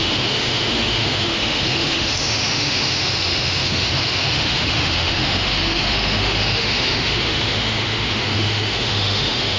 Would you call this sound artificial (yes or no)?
yes